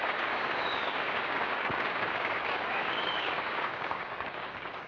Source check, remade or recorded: remade